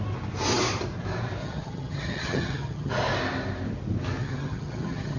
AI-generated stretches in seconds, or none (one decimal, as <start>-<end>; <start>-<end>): 1.4-2.9; 4.2-5.2